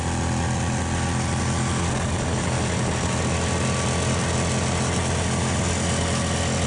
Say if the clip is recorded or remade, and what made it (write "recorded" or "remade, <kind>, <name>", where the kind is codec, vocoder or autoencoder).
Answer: recorded